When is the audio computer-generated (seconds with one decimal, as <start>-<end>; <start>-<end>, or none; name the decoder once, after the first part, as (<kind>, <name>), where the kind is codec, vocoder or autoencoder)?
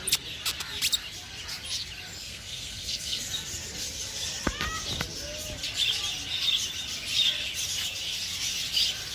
2.2-3.2 (codec, SNAC)